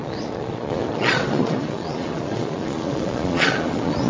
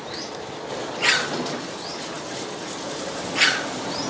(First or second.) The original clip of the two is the second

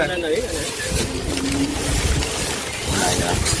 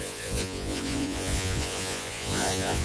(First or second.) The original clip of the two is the first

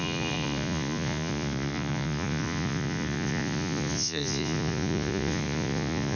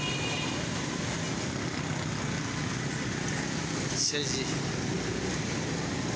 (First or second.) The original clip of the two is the second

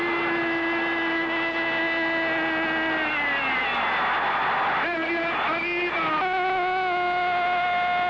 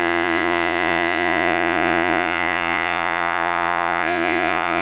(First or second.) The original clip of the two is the first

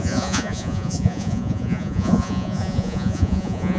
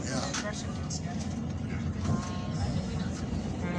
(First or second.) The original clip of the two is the second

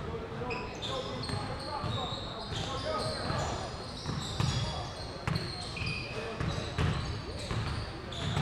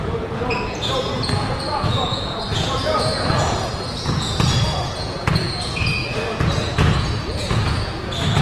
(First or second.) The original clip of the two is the first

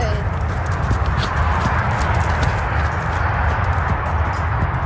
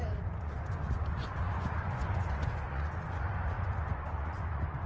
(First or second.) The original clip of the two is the first